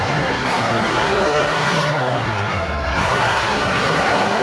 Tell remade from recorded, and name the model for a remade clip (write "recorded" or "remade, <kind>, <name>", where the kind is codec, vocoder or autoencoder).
remade, codec, SNAC